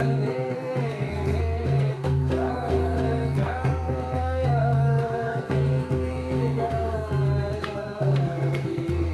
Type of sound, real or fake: fake